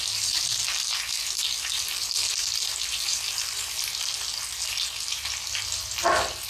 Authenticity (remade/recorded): recorded